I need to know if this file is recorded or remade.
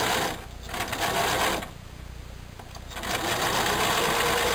recorded